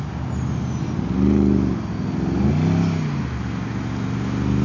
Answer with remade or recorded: recorded